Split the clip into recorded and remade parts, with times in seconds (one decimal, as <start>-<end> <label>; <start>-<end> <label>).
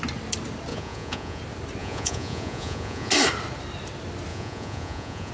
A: 0.0-0.7 recorded; 0.7-1.4 remade; 1.4-1.8 recorded; 1.8-3.1 remade; 3.1-4.3 recorded; 4.3-5.3 remade